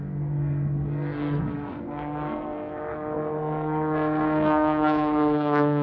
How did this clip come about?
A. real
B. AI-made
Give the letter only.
B